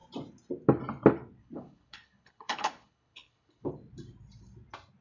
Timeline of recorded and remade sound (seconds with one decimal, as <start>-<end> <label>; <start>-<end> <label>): 0.0-1.4 recorded; 1.4-3.7 remade; 3.7-5.0 recorded

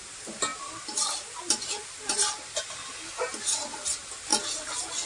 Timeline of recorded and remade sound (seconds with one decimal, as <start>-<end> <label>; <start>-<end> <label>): 0.0-5.1 recorded